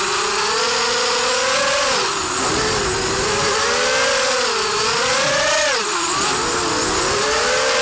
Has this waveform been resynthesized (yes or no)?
no